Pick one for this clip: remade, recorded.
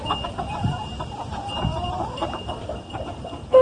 recorded